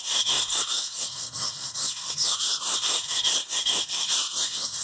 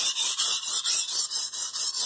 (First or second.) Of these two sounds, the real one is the second